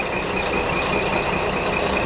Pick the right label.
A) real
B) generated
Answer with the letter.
A